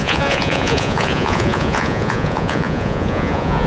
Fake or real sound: fake